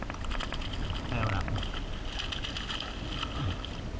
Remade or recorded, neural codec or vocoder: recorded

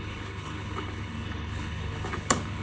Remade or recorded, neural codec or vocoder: remade, codec, HILCodec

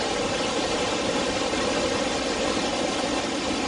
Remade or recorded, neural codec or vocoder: recorded